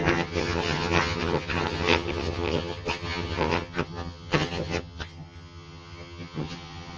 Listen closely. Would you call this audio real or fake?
fake